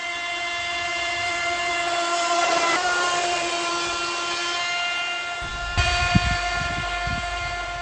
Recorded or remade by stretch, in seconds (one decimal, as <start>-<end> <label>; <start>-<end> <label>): 0.0-0.9 recorded; 0.9-1.6 remade; 1.6-2.4 recorded; 2.4-3.7 remade; 3.7-5.5 recorded; 5.5-7.1 remade; 7.1-7.8 recorded